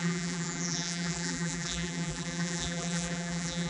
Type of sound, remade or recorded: remade